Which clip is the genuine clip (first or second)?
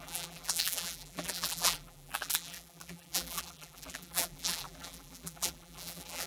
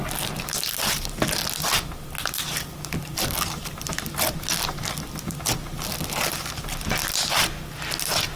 second